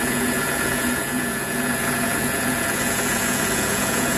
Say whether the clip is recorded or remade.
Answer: remade